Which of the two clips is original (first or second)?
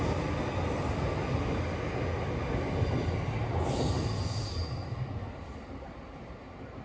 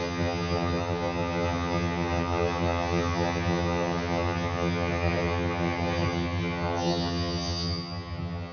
first